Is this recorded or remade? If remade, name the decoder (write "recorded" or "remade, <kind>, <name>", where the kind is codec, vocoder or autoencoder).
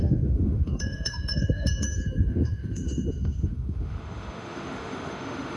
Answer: remade, autoencoder, DAC-VAE